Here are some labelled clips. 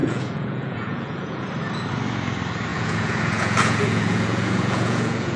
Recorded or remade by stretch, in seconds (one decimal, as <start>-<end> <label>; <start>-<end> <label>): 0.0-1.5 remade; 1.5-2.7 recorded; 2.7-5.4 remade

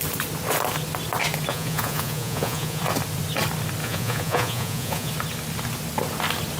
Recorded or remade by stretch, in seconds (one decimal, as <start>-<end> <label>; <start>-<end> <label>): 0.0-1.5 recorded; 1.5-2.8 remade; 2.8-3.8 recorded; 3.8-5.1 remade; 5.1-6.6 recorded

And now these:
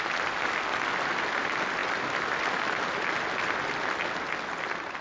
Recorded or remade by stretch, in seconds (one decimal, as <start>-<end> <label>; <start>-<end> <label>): 0.0-5.0 recorded